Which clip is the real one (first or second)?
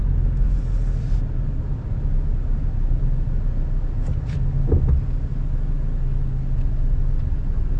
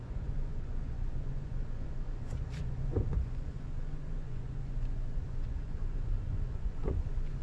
first